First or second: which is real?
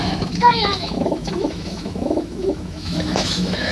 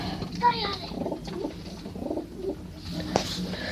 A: second